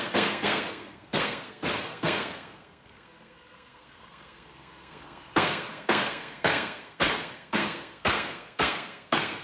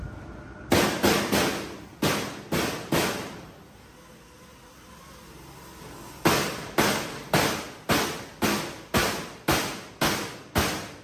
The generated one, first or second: first